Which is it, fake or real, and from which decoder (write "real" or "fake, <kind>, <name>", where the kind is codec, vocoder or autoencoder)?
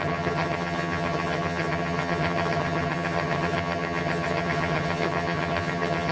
fake, vocoder, HiFi-GAN